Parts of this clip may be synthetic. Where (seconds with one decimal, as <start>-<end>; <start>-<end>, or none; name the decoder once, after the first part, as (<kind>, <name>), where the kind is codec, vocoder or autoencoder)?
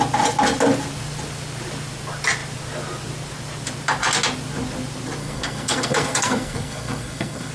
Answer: 5.2-7.5 (codec, SNAC)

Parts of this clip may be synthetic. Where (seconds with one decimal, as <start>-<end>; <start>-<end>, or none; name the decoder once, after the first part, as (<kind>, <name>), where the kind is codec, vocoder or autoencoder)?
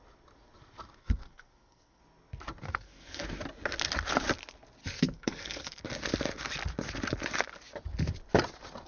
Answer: 1.0-2.0 (codec, SNAC); 2.6-3.2; 4.8-5.8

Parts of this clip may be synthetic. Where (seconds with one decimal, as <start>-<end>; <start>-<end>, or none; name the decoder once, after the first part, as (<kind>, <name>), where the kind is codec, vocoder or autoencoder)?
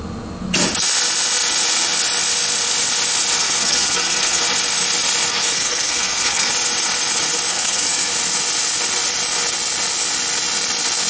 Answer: 3.4-4.4 (codec, SNAC); 5.3-6.5; 7.5-8.1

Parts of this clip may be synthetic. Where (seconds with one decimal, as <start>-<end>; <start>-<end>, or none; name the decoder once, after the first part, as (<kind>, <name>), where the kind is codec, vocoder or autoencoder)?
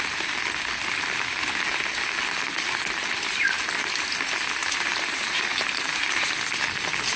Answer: 4.6-6.2 (vocoder, BigVGAN v2)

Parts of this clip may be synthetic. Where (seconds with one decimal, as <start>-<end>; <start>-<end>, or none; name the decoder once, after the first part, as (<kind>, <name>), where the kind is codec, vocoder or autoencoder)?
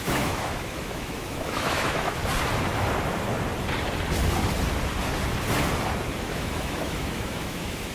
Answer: 0.0-2.2 (autoencoder, DAC-VAE); 6.2-7.9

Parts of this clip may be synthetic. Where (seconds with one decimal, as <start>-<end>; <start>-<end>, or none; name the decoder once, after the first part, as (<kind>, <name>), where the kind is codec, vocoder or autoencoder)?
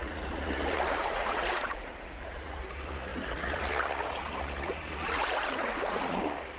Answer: 0.0-6.6 (vocoder, Vocos)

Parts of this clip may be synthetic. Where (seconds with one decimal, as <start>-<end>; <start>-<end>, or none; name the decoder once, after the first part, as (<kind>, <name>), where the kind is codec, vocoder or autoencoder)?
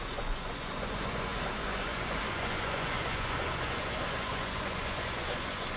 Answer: 0.0-5.8 (vocoder, Vocos)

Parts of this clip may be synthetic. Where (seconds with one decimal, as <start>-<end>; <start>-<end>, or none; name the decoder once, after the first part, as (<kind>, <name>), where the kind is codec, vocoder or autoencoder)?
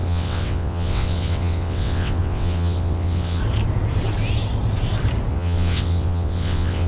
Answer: 0.0-3.4 (vocoder, WaveNeXt); 5.3-6.9